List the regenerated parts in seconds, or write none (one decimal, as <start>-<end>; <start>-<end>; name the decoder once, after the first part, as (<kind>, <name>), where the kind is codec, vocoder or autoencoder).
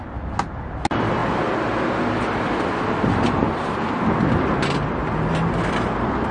none